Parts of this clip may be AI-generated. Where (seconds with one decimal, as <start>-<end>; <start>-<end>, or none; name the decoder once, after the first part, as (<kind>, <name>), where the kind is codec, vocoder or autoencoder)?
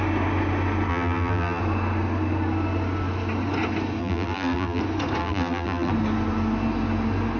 0.9-1.6 (vocoder, BigVGAN v2); 4.0-4.8; 5.2-5.9